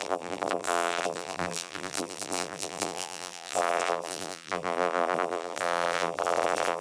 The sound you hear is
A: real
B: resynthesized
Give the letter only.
B